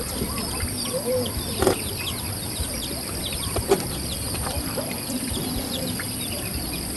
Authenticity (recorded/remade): recorded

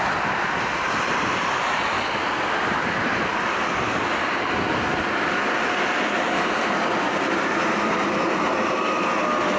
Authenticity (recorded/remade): recorded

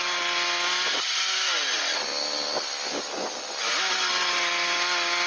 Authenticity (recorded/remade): recorded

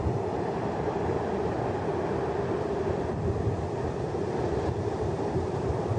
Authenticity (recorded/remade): remade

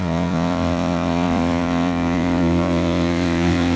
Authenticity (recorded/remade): remade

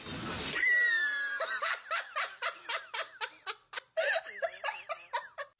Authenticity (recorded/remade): recorded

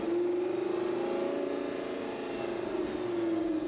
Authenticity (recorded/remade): recorded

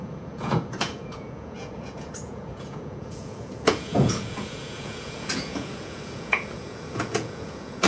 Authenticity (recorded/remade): remade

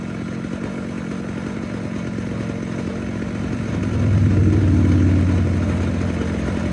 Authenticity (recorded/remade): recorded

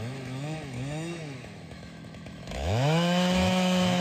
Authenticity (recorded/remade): remade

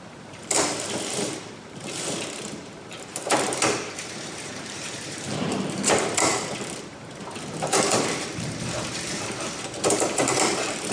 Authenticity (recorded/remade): remade